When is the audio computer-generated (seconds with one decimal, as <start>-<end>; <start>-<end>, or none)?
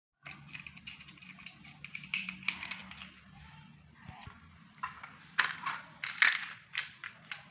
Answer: none